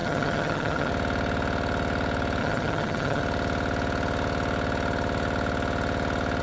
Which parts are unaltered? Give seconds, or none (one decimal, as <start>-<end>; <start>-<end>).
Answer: 0.9-2.4; 3.2-6.4